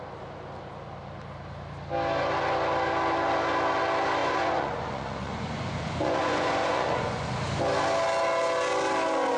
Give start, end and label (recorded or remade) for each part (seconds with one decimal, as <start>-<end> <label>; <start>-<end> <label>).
0.0-4.2 recorded; 4.2-7.4 remade; 7.4-9.4 recorded